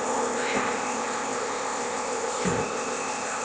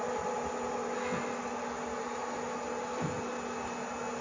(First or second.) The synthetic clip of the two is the first